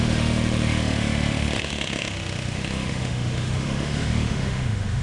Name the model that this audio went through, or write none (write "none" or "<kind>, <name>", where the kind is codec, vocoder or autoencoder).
autoencoder, DAC-VAE